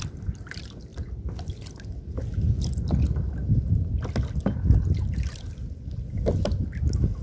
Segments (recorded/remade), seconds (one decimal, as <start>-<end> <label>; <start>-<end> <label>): 0.0-7.2 recorded